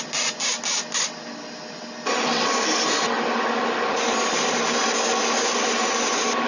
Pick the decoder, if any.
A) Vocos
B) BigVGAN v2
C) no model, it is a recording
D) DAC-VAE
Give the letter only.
C